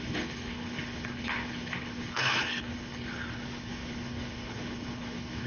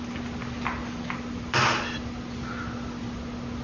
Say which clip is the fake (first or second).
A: first